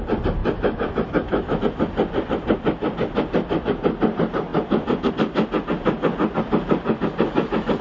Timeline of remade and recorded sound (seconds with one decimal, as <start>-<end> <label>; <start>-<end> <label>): 0.0-0.4 recorded; 0.4-1.6 remade; 1.6-7.8 recorded